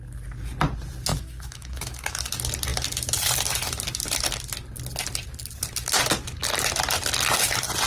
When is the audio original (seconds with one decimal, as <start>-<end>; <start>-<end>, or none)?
0.0-1.1; 2.2-7.9